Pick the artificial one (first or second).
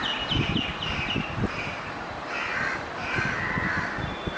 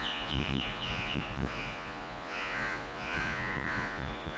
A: second